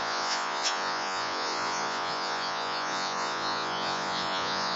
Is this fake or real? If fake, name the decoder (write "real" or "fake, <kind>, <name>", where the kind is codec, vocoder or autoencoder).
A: fake, vocoder, Vocos